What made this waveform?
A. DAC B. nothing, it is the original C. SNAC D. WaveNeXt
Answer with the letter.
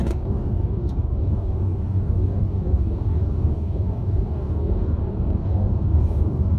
A